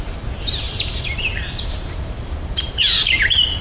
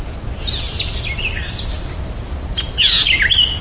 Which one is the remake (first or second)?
first